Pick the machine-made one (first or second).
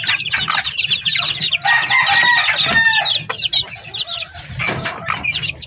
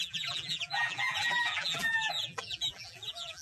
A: second